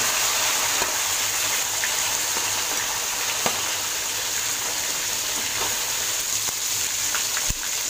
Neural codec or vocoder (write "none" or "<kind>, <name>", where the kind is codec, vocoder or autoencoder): vocoder, BigVGAN v2